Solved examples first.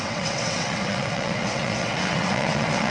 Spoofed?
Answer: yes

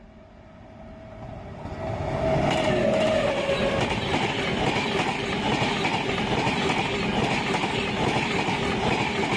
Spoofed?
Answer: no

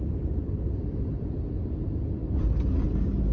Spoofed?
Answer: no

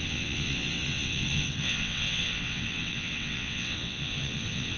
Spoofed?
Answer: yes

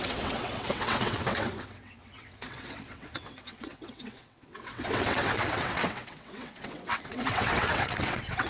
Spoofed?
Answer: yes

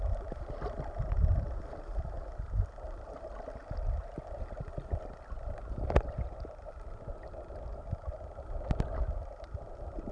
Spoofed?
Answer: no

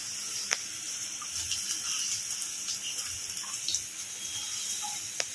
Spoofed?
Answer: no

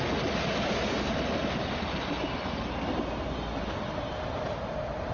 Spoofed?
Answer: no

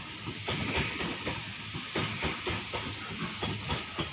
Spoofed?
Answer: no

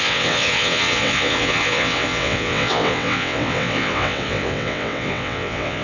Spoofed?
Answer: yes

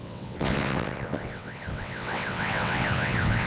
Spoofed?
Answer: yes